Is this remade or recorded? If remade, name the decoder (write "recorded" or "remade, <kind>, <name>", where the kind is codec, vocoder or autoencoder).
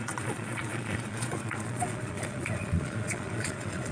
remade, vocoder, Vocos